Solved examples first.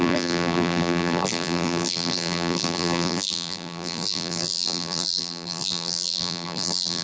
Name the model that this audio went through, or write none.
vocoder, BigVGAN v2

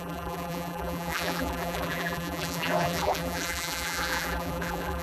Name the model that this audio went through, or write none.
vocoder, BigVGAN v2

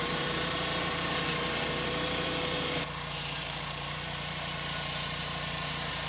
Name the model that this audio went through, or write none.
vocoder, BigVGAN v2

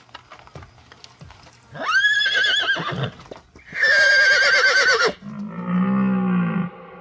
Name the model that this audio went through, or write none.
none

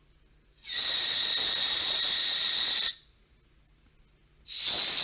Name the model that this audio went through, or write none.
none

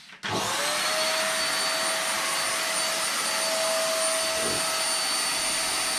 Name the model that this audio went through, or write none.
none